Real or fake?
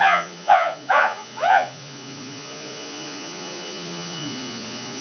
fake